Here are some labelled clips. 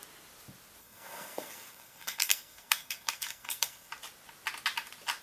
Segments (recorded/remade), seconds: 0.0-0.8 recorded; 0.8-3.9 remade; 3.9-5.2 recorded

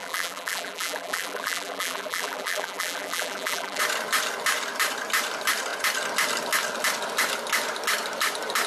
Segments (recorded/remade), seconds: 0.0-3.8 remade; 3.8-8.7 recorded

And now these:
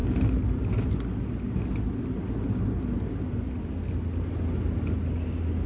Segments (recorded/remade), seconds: 0.0-5.7 recorded

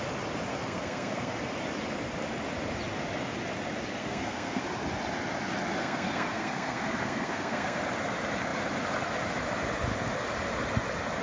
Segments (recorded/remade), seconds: 0.0-0.5 recorded; 0.5-1.3 remade; 1.3-4.0 recorded; 4.0-4.6 remade; 4.6-5.8 recorded; 5.8-7.8 remade; 7.8-11.2 recorded